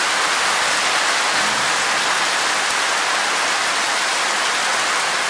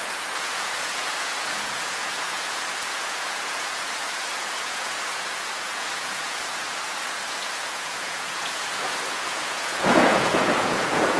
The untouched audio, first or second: first